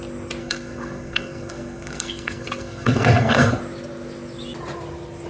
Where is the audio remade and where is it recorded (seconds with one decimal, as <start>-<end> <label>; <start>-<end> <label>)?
0.0-0.4 recorded; 0.4-3.6 remade; 3.6-5.3 recorded